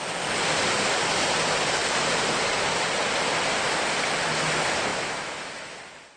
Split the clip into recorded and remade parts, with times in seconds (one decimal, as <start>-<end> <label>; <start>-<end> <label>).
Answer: 0.0-4.9 recorded; 4.9-5.8 remade; 5.8-6.2 recorded